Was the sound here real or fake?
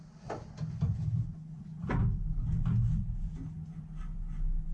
real